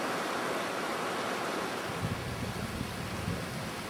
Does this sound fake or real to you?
real